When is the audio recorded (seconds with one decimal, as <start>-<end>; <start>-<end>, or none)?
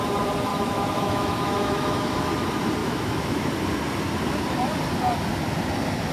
0.0-0.5; 2.1-2.8; 3.5-6.1